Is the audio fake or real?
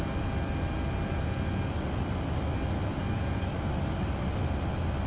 real